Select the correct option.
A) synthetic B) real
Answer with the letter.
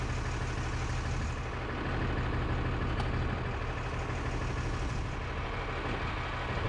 B